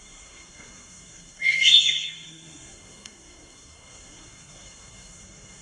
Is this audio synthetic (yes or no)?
yes